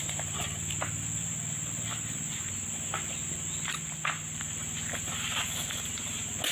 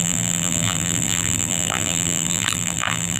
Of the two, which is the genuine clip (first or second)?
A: first